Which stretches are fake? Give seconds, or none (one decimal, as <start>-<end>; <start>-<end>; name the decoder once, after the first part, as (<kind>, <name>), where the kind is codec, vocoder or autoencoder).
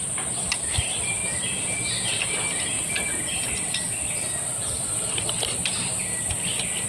none